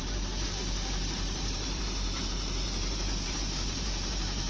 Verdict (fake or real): fake